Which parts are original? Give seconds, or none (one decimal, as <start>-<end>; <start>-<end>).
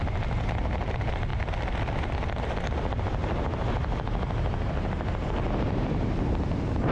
0.0-6.9